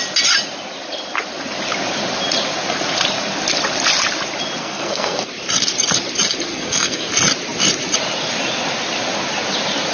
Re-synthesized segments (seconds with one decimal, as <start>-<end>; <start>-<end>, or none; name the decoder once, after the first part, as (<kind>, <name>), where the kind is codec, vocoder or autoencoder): 4.6-5.3 (codec, SNAC); 6.5-7.1